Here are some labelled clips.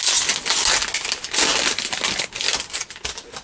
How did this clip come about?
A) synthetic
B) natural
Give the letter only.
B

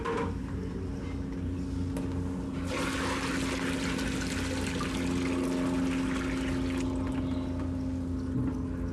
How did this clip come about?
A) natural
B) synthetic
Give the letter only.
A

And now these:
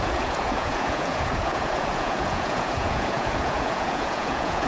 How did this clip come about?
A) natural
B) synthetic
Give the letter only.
B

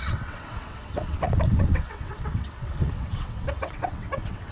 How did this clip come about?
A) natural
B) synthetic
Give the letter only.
B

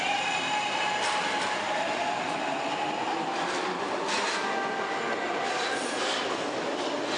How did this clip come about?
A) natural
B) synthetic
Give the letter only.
A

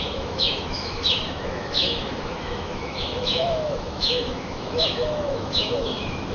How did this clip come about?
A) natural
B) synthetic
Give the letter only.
B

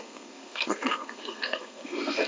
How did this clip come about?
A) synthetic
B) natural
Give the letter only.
A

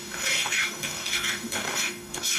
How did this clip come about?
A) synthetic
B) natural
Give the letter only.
A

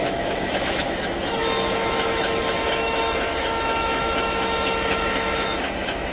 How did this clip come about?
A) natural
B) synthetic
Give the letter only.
B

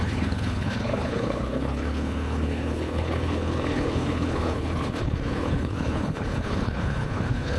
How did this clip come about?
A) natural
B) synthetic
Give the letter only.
B